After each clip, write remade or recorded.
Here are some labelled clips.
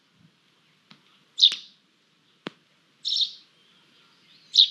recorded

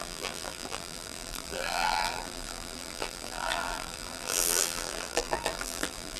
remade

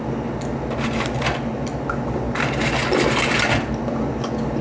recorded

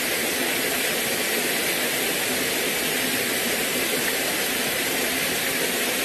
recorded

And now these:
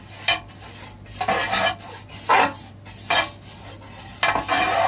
recorded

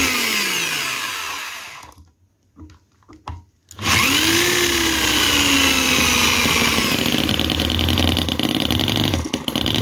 recorded